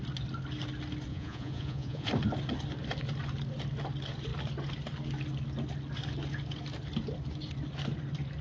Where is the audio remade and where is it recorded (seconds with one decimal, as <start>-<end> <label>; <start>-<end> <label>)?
0.0-1.1 recorded; 1.1-2.1 remade; 2.1-8.4 recorded